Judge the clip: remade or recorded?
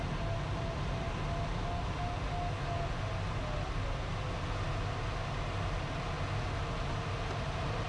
recorded